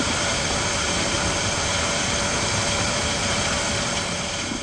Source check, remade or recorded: remade